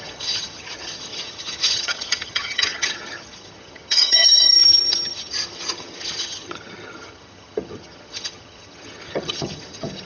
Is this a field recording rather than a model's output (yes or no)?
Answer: no